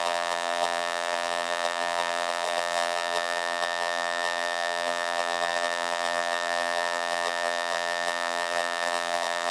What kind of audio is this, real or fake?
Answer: fake